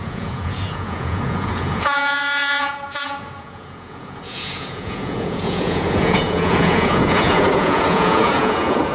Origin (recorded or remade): remade